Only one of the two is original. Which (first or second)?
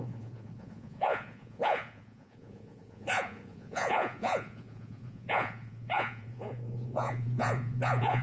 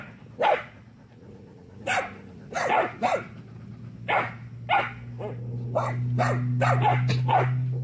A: second